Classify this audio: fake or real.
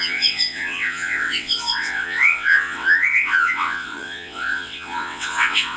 fake